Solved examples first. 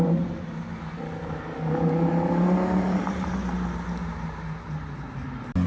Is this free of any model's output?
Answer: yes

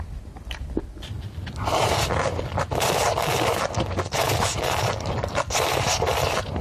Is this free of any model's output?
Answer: yes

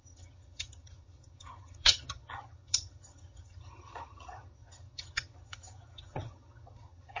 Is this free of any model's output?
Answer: no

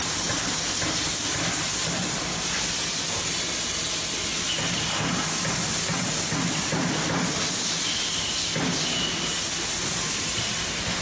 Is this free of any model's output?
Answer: yes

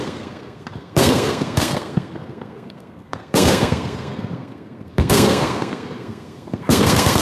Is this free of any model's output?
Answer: no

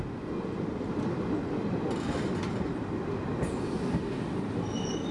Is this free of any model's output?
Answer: yes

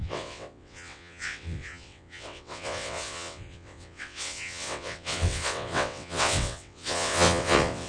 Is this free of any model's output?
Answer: no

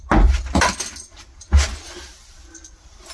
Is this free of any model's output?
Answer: yes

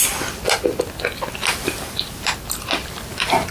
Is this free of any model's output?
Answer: yes